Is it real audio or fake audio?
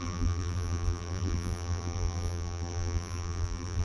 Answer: fake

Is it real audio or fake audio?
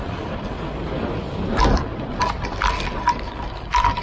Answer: real